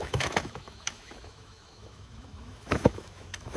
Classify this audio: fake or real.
fake